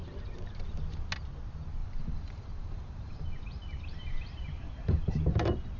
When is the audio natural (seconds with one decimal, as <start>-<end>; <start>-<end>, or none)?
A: 0.0-1.8; 5.1-5.8